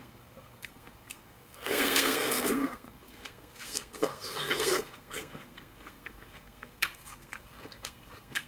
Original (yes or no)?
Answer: no